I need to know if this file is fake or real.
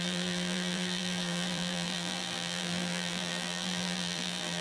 fake